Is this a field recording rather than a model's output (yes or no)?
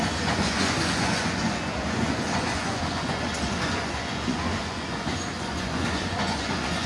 no